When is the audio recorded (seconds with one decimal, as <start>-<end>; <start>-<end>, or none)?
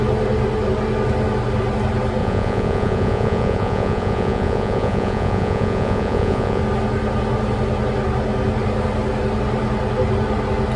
0.0-2.2; 6.6-10.8